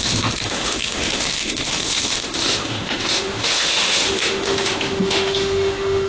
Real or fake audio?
fake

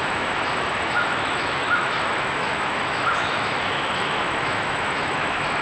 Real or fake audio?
fake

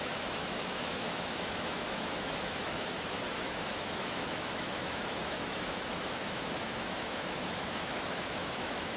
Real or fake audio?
fake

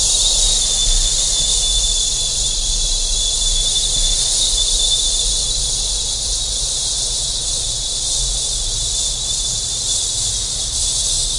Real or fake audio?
real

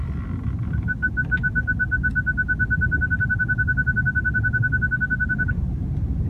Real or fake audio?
real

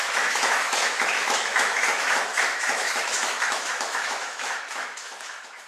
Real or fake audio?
fake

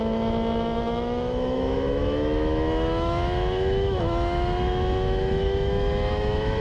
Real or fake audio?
fake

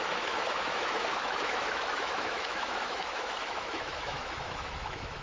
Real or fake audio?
fake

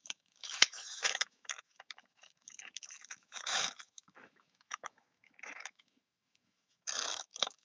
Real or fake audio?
fake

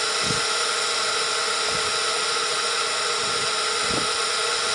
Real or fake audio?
real